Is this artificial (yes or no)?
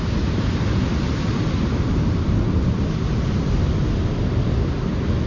no